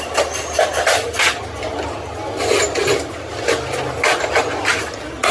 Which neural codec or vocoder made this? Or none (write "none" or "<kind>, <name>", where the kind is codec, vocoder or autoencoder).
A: none